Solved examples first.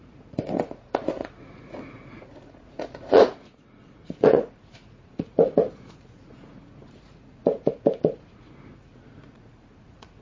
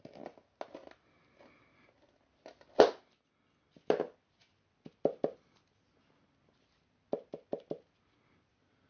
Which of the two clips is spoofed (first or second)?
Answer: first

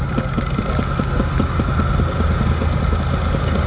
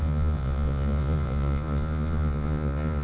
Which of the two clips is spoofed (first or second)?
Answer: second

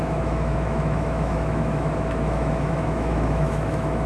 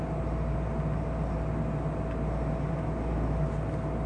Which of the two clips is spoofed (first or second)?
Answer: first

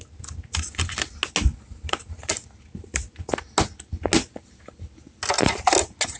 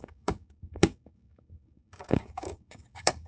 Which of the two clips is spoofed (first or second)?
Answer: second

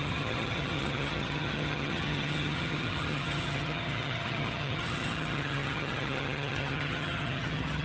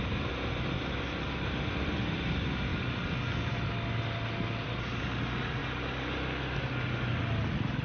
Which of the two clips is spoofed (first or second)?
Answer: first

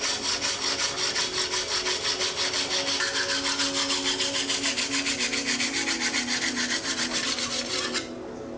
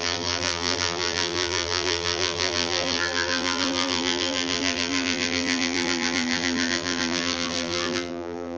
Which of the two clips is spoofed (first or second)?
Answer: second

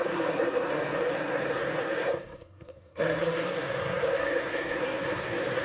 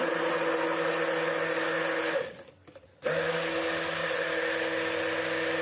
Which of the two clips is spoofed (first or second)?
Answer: first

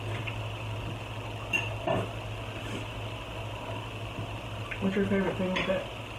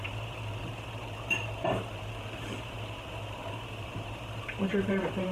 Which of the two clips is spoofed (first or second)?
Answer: second